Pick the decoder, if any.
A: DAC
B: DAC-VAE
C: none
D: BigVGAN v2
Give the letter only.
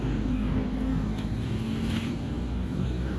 A